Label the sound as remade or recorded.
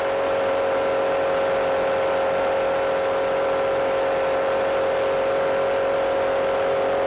recorded